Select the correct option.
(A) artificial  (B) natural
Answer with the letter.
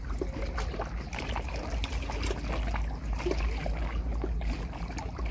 B